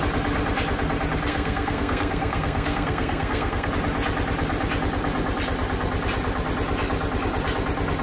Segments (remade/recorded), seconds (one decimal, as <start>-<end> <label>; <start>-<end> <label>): 0.0-1.3 recorded; 1.3-3.7 remade; 3.7-8.0 recorded